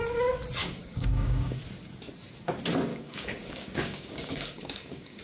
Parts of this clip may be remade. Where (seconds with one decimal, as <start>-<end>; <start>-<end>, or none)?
0.6-1.6; 2.9-5.2